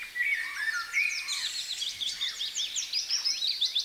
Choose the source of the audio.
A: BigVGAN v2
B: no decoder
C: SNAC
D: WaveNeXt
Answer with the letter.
B